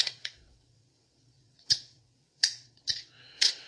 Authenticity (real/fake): fake